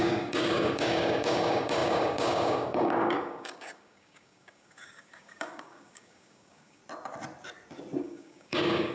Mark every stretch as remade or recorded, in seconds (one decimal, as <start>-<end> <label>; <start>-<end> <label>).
0.0-6.8 remade; 6.8-8.0 recorded; 8.0-8.9 remade